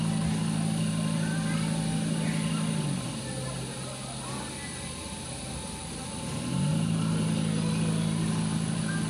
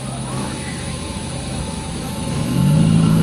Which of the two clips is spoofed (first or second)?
second